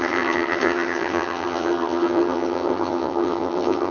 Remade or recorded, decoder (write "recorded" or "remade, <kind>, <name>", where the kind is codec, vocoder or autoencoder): remade, vocoder, HiFi-GAN